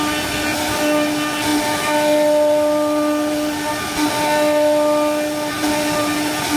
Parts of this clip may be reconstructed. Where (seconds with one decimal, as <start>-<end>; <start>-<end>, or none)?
none